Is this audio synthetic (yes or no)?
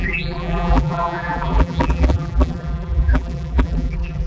yes